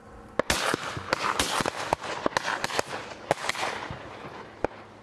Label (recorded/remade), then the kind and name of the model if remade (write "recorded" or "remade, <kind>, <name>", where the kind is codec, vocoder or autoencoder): recorded